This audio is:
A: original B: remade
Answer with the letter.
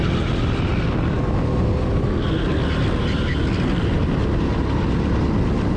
A